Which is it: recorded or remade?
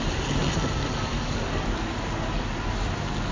recorded